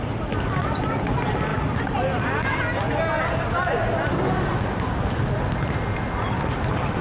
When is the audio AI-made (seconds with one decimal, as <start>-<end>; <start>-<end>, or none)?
none